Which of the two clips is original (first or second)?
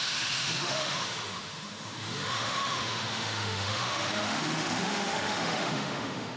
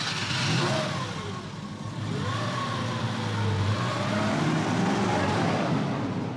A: second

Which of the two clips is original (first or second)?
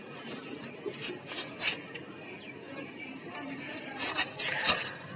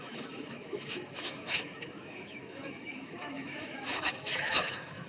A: first